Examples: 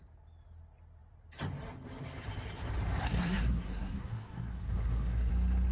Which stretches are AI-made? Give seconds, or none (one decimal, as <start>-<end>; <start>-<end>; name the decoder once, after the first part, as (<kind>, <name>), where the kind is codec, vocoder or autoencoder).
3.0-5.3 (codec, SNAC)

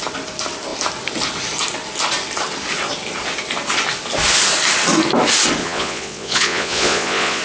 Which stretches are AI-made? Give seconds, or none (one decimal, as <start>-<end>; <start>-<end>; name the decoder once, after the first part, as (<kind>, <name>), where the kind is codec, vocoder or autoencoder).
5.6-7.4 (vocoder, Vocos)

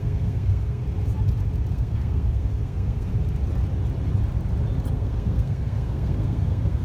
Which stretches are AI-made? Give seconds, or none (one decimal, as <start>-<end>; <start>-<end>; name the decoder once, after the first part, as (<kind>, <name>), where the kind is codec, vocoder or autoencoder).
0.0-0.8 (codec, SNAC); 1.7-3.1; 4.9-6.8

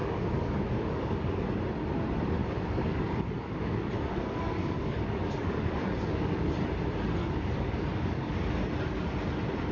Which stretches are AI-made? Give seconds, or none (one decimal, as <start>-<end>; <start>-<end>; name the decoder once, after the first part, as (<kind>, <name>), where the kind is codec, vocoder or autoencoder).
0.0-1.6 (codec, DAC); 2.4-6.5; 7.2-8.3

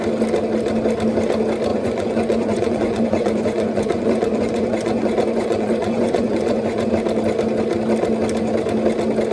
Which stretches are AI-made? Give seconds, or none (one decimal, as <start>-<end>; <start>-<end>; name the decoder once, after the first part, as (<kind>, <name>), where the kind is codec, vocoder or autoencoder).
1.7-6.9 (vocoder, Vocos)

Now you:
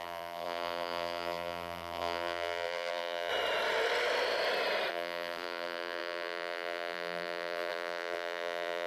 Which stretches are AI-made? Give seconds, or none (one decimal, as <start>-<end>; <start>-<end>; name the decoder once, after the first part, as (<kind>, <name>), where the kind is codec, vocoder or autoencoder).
0.0-3.3 (vocoder, BigVGAN v2); 4.9-8.9

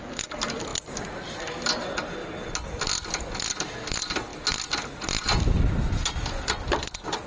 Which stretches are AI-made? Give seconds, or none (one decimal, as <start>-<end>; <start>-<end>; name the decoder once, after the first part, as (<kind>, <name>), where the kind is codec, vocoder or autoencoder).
none

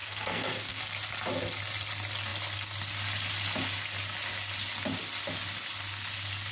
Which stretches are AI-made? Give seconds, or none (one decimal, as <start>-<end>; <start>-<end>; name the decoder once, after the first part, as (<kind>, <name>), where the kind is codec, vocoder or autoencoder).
0.0-0.8 (codec, SNAC)